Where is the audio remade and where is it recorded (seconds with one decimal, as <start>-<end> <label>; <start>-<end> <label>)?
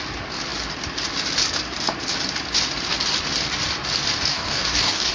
0.0-4.3 recorded; 4.3-5.1 remade